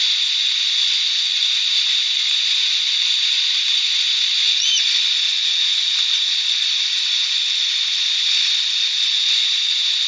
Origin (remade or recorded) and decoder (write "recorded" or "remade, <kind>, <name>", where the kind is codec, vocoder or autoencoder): recorded